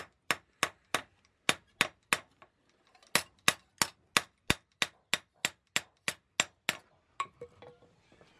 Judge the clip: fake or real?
real